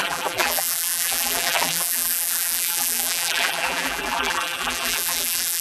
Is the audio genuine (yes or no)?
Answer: no